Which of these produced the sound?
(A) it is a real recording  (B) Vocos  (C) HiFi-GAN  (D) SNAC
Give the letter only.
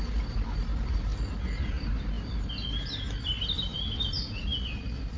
A